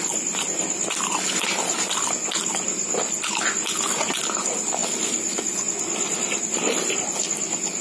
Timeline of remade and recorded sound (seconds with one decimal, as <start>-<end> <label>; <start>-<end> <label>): 0.0-7.8 recorded